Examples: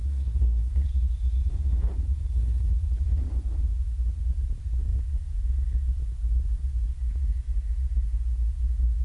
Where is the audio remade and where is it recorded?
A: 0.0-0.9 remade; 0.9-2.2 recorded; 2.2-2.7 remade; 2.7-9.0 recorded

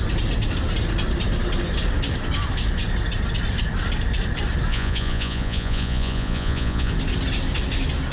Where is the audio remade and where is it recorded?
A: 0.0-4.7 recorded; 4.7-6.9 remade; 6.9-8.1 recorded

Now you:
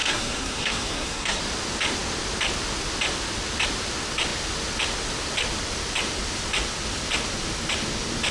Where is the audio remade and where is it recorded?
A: 0.0-1.4 remade; 1.4-8.3 recorded

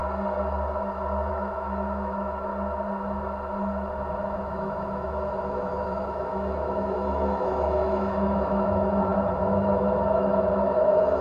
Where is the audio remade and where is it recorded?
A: 0.0-1.3 recorded; 1.3-2.5 remade; 2.5-4.4 recorded; 4.4-11.2 remade

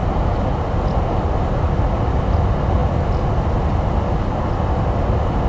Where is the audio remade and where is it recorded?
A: 0.0-5.5 recorded

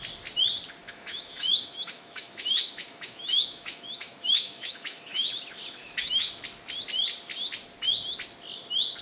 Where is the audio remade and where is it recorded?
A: 0.0-0.8 recorded; 0.8-5.3 remade; 5.3-5.8 recorded; 5.8-6.4 remade; 6.4-9.0 recorded